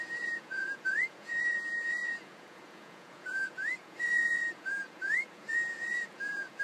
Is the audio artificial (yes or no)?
yes